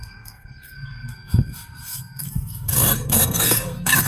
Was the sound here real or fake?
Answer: fake